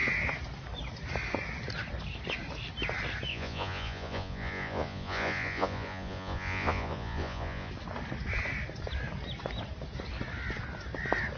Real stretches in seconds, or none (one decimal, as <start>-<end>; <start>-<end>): 0.0-3.3; 7.7-11.4